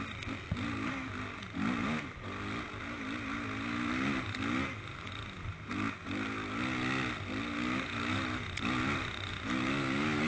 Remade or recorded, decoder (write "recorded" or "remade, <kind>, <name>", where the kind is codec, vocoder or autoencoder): recorded